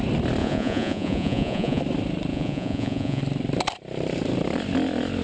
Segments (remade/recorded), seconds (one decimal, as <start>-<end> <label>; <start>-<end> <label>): 0.0-0.4 recorded; 0.4-1.8 remade; 1.8-2.3 recorded; 2.3-3.2 remade; 3.2-5.2 recorded